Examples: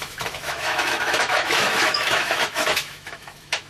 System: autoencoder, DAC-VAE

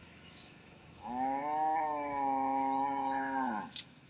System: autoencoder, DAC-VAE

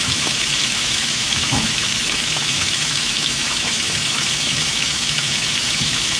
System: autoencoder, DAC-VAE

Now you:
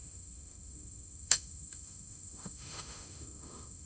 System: autoencoder, DAC-VAE